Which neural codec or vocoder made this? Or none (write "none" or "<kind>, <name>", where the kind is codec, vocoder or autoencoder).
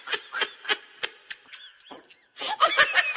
none